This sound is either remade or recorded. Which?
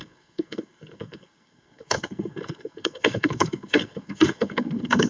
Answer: remade